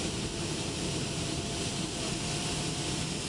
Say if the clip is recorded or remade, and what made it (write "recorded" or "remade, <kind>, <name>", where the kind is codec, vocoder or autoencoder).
recorded